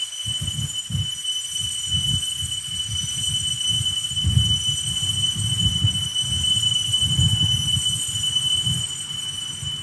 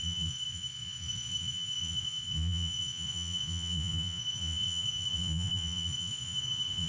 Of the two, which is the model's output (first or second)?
second